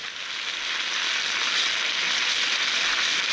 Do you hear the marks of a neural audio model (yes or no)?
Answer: no